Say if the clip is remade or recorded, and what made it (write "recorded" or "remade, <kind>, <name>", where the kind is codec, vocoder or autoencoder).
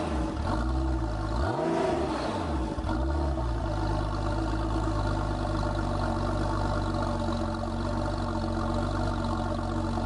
recorded